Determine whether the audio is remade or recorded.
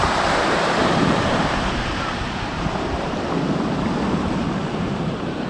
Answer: remade